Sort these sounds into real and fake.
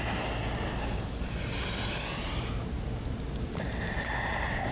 real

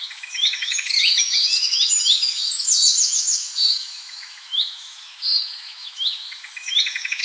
fake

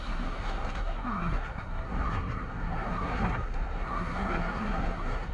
fake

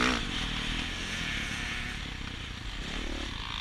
real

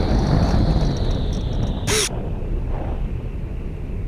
real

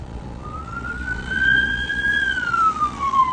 fake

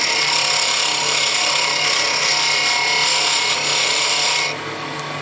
real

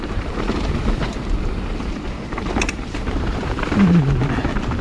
fake